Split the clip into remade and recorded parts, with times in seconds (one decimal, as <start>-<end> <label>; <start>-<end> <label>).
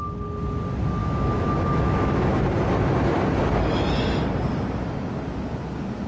0.0-1.0 recorded; 1.0-2.3 remade; 2.3-6.1 recorded